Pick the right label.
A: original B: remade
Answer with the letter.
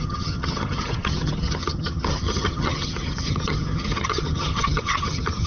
B